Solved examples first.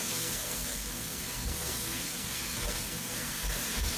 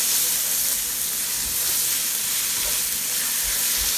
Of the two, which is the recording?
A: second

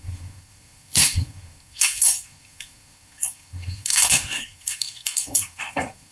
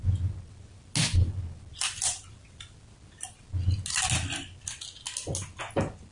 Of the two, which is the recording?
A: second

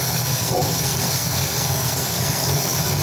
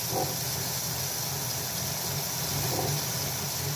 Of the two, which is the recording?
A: second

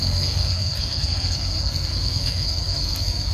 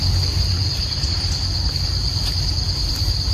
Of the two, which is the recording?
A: second